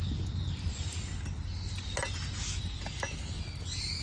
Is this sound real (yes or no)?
yes